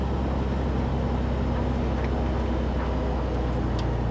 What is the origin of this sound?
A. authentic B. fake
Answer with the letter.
A